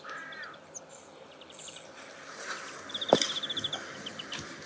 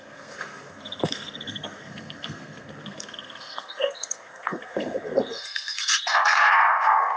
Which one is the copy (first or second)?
second